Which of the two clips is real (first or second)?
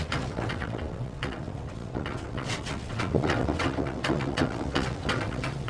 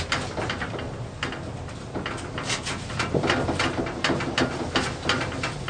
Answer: second